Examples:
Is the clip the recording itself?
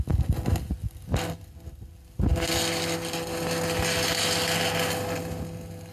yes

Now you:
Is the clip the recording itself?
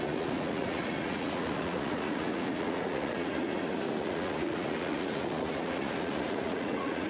no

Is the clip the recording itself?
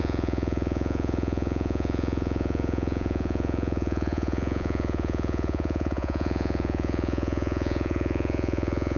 no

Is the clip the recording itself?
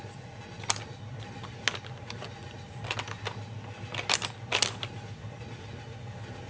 yes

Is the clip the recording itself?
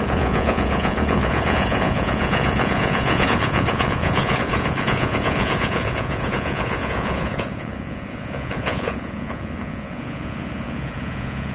no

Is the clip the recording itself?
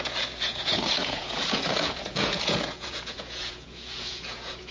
no